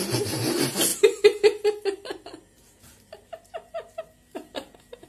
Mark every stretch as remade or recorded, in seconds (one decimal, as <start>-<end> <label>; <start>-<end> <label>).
0.0-5.1 recorded